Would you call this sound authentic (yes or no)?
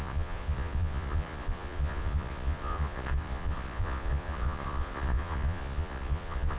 no